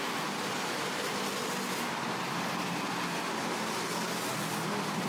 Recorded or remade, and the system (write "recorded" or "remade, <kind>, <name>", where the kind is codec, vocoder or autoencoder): recorded